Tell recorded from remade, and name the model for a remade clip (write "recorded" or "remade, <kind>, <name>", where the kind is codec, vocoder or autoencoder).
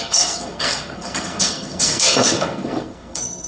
remade, codec, SNAC